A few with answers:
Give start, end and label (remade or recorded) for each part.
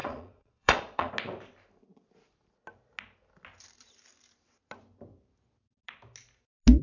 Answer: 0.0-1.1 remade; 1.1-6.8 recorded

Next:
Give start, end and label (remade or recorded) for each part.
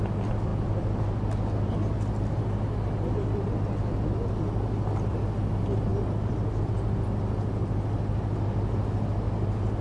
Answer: 0.0-9.8 recorded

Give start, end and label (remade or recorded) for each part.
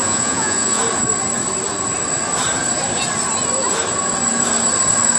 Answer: 0.0-0.8 remade; 0.8-5.2 recorded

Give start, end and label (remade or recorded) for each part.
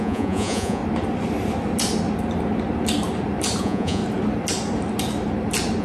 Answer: 0.0-0.8 remade; 0.8-3.6 recorded; 3.6-4.0 remade; 4.0-5.8 recorded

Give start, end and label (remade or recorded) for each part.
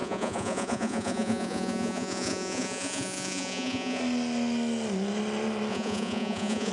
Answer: 0.0-4.0 remade; 4.0-5.7 recorded; 5.7-6.7 remade